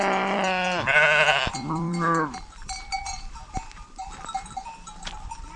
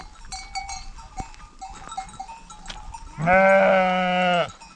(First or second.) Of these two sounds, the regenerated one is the first